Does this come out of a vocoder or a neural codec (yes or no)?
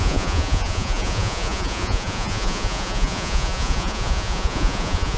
yes